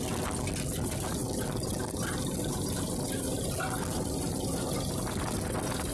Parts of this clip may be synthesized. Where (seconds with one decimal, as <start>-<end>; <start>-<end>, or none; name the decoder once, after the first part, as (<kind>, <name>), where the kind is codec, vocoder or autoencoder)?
none